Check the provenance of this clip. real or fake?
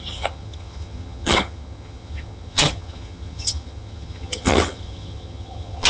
fake